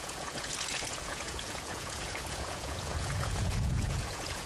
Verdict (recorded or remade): remade